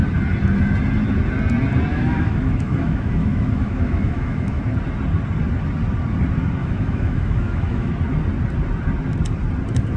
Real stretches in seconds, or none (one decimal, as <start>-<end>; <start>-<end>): 0.0-1.9; 4.6-6.6; 7.9-10.0